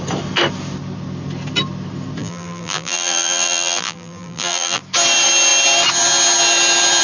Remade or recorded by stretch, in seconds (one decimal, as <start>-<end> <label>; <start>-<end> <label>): 0.0-2.2 recorded; 2.2-4.8 remade; 4.8-7.0 recorded